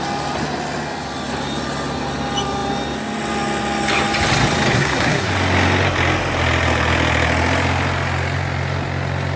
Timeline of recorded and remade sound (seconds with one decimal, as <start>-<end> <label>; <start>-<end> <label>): 0.0-4.7 recorded; 4.7-5.3 remade; 5.3-9.4 recorded